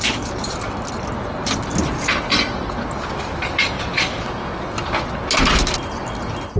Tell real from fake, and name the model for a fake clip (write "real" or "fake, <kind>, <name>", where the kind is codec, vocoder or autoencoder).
real